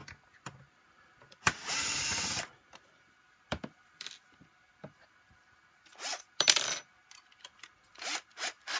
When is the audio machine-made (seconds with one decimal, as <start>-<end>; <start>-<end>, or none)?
none